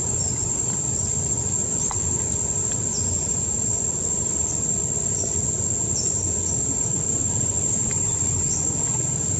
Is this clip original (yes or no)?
yes